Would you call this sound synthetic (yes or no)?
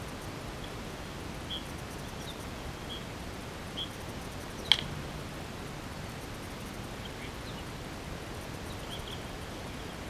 no